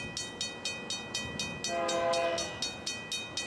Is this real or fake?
real